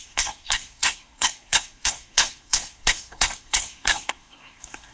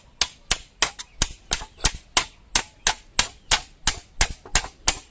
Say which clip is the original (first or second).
second